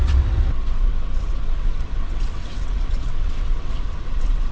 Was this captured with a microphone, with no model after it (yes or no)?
no